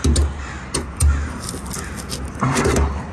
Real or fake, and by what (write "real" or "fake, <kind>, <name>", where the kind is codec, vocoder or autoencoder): real